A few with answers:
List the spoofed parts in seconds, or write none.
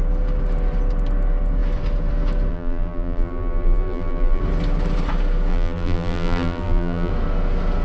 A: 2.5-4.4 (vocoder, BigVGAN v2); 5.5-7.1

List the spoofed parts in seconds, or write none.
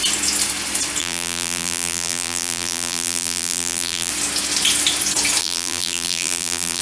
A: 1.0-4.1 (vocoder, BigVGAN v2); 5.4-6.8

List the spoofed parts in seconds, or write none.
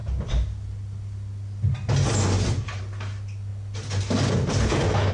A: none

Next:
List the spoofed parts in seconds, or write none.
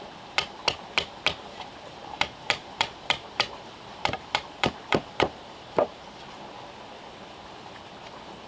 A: 2.0-6.5 (vocoder, BigVGAN v2)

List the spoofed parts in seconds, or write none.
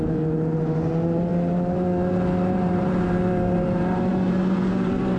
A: 0.0-1.3 (vocoder, BigVGAN v2); 2.5-5.2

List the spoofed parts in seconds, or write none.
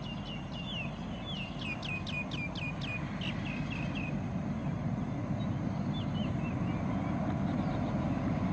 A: 4.6-5.1 (vocoder, BigVGAN v2)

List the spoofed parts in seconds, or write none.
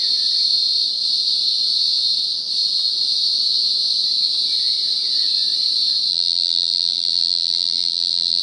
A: 6.1-8.4 (vocoder, BigVGAN v2)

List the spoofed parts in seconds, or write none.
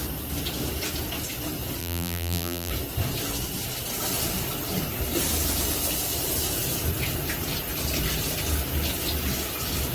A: 1.8-2.7 (vocoder, BigVGAN v2)